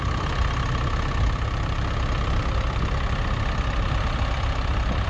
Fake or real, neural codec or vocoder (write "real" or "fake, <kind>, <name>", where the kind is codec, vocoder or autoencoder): real